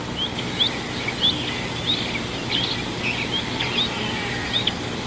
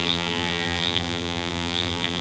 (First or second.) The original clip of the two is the first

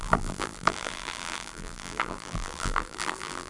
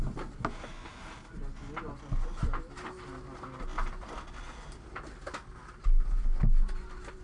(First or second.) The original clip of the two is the second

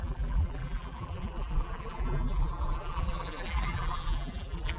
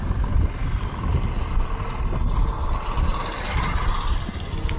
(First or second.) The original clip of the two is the second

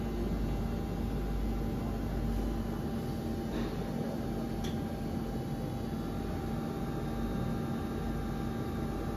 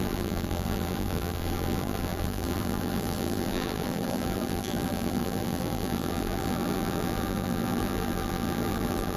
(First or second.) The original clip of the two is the first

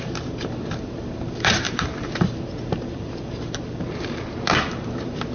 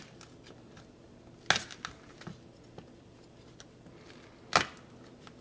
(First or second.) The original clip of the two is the second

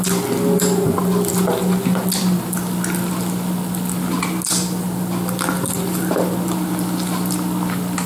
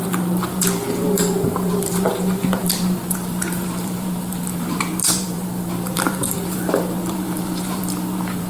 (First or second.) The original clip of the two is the first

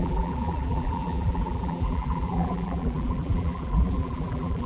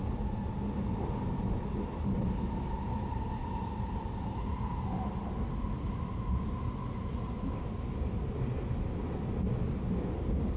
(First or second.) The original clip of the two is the second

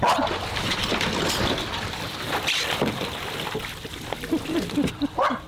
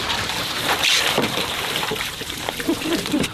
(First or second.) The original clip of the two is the first